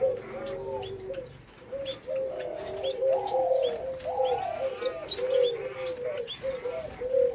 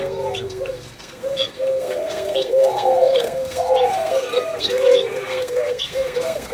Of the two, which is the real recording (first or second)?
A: first